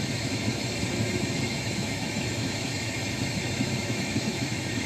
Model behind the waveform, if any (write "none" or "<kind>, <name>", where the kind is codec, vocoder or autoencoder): autoencoder, DAC-VAE